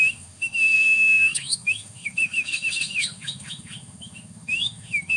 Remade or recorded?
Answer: remade